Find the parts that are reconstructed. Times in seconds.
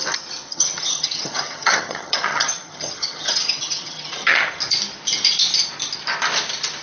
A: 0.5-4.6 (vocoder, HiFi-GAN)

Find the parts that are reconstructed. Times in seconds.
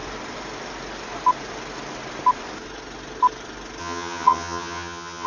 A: 3.8-5.3 (vocoder, HiFi-GAN)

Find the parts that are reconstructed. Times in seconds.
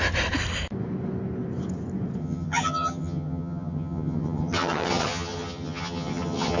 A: 2.2-6.6 (vocoder, HiFi-GAN)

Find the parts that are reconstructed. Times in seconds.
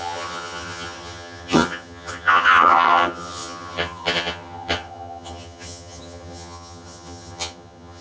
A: 0.0-8.0 (vocoder, HiFi-GAN)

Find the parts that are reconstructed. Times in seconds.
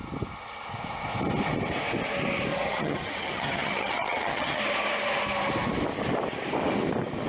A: 2.5-4.6 (vocoder, HiFi-GAN)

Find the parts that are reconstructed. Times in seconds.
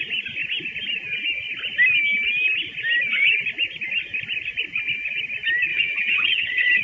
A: 5.7-6.8 (vocoder, HiFi-GAN)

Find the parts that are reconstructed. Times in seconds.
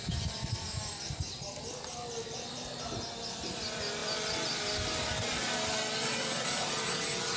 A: none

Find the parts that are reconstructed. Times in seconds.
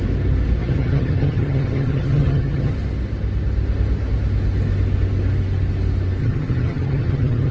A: 0.6-2.7 (vocoder, HiFi-GAN); 6.2-7.5